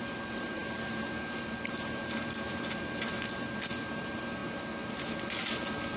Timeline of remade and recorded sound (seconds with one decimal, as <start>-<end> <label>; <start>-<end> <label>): 0.0-6.0 recorded